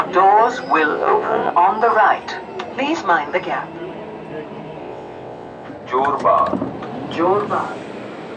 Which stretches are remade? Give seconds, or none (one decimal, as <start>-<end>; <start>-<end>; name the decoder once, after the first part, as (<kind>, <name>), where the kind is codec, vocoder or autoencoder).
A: 0.9-1.5 (vocoder, WaveNeXt); 4.8-5.7